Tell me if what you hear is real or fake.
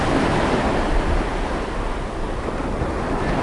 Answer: real